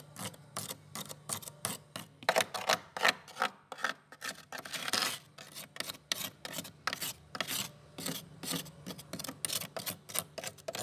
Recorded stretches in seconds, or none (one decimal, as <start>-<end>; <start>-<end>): 0.0-10.8